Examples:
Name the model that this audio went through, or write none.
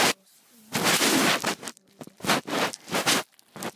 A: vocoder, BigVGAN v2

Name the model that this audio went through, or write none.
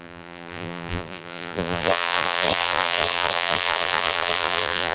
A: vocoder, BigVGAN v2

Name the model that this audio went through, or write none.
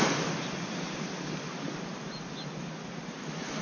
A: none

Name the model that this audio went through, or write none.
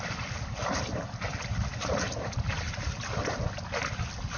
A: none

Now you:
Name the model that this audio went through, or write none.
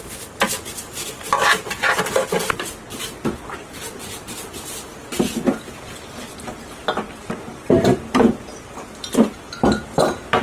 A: none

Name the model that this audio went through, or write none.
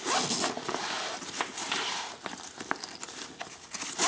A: none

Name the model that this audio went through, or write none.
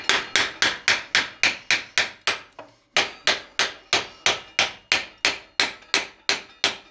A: none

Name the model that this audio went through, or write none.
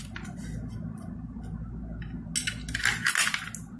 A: none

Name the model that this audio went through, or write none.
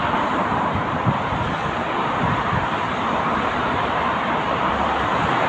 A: vocoder, BigVGAN v2